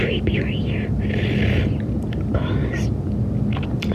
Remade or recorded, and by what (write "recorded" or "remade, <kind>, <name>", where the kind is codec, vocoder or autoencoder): recorded